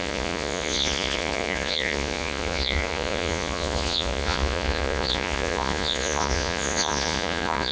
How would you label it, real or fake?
fake